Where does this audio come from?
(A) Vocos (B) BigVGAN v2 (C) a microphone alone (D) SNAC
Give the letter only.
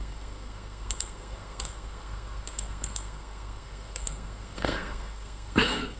D